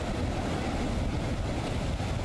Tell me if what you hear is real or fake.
real